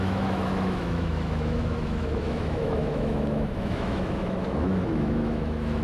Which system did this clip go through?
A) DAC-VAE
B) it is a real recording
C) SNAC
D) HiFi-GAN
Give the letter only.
A